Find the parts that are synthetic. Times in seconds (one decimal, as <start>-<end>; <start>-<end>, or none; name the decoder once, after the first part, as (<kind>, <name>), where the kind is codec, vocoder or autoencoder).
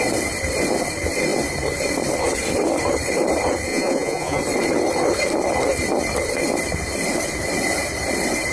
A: 3.7-4.4 (vocoder, Vocos)